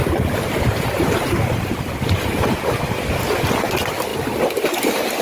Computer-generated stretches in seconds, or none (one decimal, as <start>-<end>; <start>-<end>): none